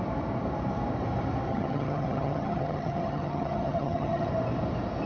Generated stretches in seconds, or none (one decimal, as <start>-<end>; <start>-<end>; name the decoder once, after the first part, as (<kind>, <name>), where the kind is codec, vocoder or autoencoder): 1.5-4.3 (vocoder, HiFi-GAN)